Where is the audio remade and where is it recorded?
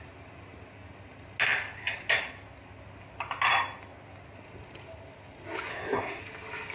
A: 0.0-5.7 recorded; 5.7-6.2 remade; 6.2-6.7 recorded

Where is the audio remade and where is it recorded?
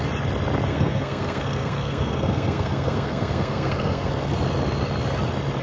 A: 0.0-0.7 recorded; 0.7-4.1 remade; 4.1-5.6 recorded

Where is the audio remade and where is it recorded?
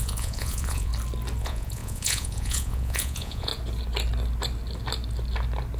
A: 0.0-0.9 remade; 0.9-1.4 recorded; 1.4-3.5 remade; 3.5-5.8 recorded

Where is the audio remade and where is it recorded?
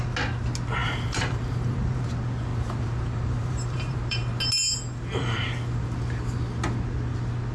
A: 0.0-0.8 recorded; 0.8-2.0 remade; 2.0-2.5 recorded; 2.5-4.3 remade; 4.3-7.5 recorded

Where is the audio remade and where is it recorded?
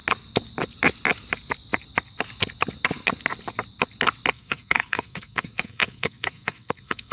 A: 0.0-4.3 recorded; 4.3-7.1 remade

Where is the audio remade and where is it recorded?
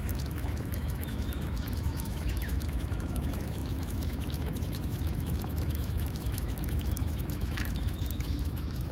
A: 0.0-8.9 remade